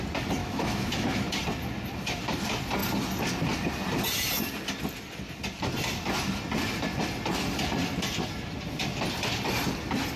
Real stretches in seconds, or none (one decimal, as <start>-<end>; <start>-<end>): 0.0-0.4; 1.3-10.2